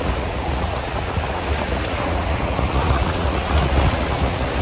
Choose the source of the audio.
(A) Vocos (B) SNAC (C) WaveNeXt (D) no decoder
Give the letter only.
A